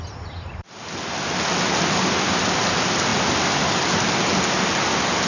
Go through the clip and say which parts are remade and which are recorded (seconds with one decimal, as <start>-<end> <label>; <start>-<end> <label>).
0.0-5.3 recorded